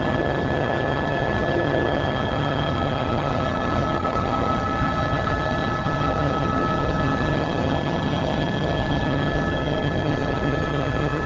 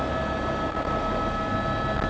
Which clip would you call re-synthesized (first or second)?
first